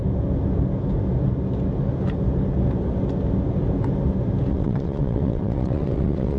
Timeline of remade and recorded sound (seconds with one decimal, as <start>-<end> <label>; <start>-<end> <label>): 0.0-4.5 recorded; 4.5-6.4 remade